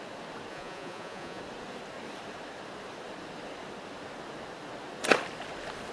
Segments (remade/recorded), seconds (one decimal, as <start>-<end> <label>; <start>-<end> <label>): 0.0-0.5 recorded; 0.5-1.4 remade; 1.4-5.9 recorded